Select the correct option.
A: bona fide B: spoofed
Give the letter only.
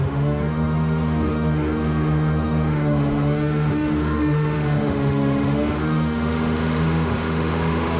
B